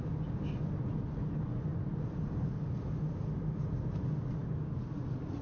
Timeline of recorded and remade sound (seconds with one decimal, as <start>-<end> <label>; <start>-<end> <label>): 0.0-5.4 recorded